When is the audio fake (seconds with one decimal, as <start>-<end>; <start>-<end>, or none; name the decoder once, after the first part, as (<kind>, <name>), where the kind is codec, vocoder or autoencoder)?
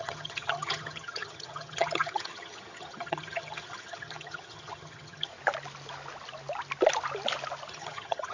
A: 0.0-5.3 (vocoder, HiFi-GAN); 7.7-8.3